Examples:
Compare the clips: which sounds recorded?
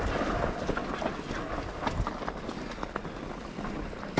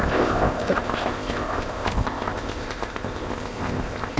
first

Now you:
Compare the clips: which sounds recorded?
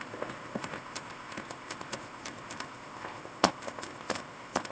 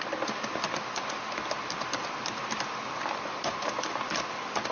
second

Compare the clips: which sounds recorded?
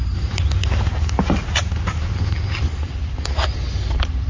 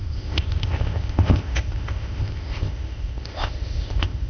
first